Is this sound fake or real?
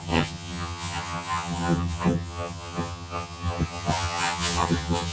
fake